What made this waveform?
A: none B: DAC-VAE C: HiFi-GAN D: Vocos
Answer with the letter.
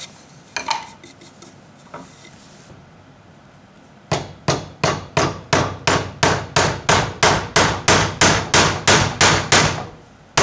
A